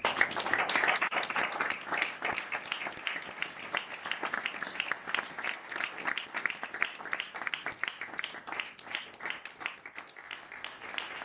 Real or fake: real